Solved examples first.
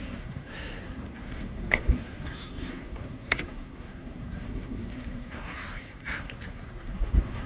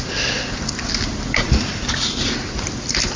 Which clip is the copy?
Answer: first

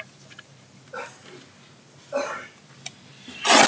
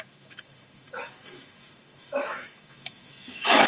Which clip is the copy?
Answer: second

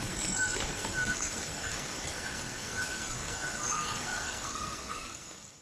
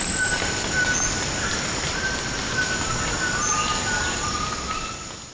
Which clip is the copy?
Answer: first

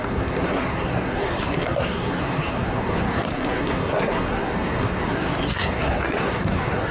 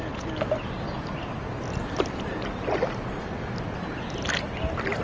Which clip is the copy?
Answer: first